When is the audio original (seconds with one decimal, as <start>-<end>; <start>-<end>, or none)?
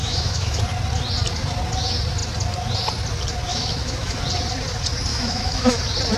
0.6-3.5; 4.2-5.1; 5.8-6.2